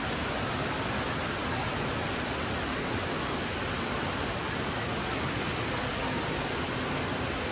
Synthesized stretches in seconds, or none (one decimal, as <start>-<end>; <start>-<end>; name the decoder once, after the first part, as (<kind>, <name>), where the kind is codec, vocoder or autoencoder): none